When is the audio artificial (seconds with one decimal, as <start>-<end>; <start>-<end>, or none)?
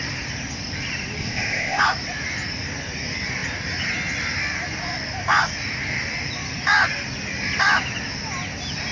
1.2-1.8